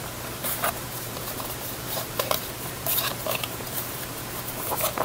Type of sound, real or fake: fake